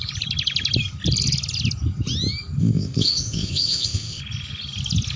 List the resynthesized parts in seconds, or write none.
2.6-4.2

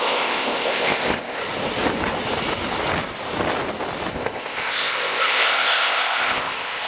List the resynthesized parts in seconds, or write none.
0.0-1.4; 4.1-6.9

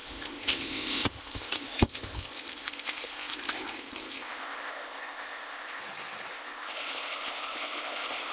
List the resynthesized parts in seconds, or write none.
0.0-5.8; 6.3-8.3